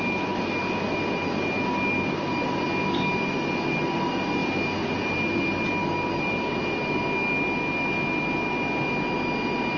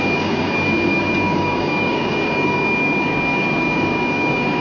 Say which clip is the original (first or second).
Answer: first